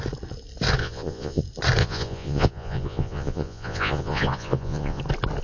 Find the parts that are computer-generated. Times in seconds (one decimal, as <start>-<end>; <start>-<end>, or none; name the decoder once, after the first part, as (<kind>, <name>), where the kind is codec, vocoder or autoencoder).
0.8-1.4 (vocoder, Vocos); 1.8-5.0